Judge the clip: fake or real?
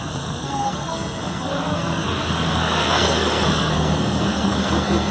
fake